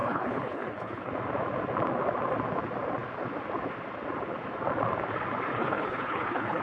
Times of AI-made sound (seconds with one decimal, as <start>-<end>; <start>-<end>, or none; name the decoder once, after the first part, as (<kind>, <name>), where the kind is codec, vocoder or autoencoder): 0.0-1.1 (codec, HILCodec); 5.5-6.6

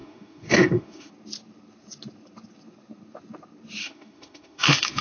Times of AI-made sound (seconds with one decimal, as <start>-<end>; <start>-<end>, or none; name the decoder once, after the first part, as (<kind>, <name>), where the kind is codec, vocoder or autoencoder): 0.0-1.1 (autoencoder, DAC-VAE); 3.8-5.0

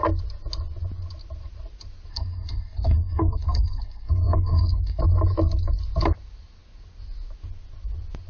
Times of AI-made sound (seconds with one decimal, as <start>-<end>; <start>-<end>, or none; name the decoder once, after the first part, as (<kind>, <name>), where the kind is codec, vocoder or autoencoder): 2.1-5.0 (codec, SNAC)